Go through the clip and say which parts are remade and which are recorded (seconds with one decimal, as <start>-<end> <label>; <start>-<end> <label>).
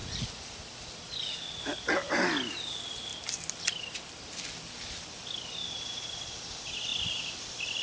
0.0-7.8 recorded